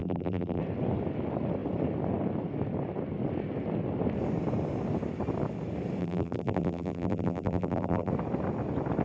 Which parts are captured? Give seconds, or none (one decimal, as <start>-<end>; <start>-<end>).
0.6-6.0; 8.1-9.0